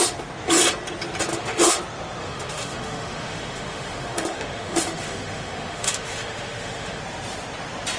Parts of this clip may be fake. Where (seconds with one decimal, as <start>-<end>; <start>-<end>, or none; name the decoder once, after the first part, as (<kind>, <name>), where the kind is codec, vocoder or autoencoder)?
1.3-1.8 (autoencoder, DAC-VAE); 2.2-7.0